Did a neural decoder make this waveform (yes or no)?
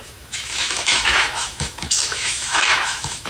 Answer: yes